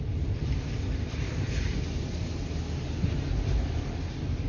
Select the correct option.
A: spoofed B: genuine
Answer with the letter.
B